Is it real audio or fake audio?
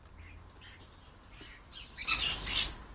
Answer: real